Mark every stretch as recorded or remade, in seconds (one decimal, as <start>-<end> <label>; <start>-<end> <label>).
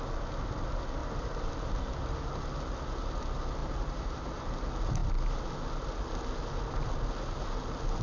0.0-1.0 recorded; 1.0-1.5 remade; 1.5-3.6 recorded; 3.6-4.5 remade; 4.5-8.0 recorded